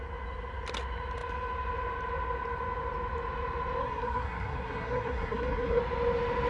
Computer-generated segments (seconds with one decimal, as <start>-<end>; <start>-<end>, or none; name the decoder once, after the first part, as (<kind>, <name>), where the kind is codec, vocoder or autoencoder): 3.8-5.8 (codec, SNAC)